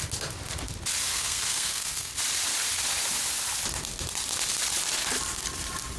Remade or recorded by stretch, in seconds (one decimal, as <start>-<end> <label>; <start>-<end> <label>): 0.0-1.1 recorded; 1.1-2.1 remade; 2.1-6.0 recorded